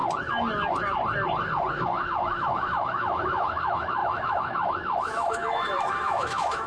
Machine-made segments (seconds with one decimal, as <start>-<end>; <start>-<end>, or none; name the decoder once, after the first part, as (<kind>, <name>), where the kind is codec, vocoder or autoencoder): 1.7-6.7 (autoencoder, DAC-VAE)